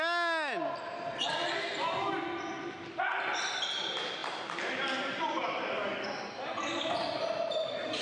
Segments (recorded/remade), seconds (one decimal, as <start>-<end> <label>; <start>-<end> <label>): 0.0-8.0 recorded